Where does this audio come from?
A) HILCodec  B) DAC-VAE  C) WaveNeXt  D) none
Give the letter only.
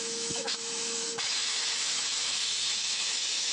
B